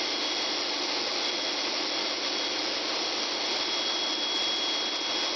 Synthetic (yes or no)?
yes